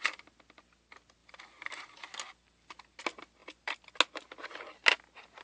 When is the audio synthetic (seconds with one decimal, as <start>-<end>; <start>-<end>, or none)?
1.2-3.0; 3.4-3.9